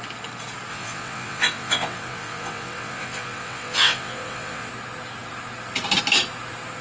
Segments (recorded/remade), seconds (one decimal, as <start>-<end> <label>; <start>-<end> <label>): 0.0-0.7 recorded; 0.7-4.7 remade; 4.7-6.8 recorded